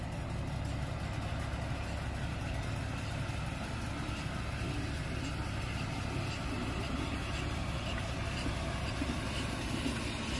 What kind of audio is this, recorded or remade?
recorded